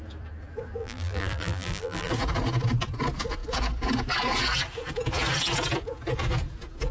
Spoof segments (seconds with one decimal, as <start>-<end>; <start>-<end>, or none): 0.8-2.1